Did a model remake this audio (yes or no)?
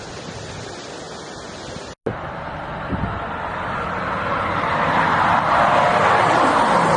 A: no